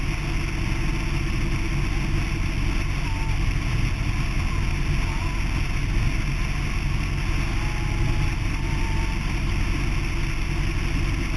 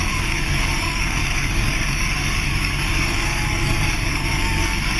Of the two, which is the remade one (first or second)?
second